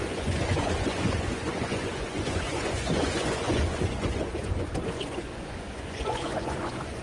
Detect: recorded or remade remade